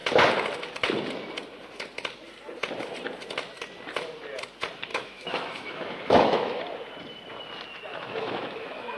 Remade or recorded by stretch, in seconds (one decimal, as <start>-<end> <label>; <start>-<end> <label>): 0.0-4.9 recorded; 4.9-6.6 remade; 6.6-7.9 recorded; 7.9-9.0 remade